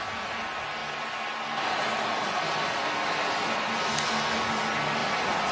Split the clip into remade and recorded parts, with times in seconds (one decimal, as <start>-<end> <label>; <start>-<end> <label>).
0.0-5.0 recorded; 5.0-5.5 remade